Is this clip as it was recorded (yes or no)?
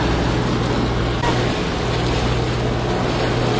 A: yes